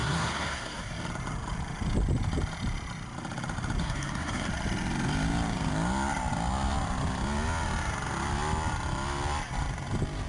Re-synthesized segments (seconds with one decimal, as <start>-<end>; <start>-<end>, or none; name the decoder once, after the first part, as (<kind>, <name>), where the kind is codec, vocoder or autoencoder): 0.0-0.9 (codec, SNAC); 3.8-4.5